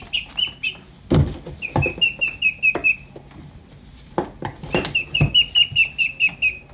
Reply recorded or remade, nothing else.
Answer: recorded